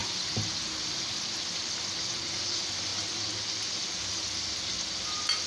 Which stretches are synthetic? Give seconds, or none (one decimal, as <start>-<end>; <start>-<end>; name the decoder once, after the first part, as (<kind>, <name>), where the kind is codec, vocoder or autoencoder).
none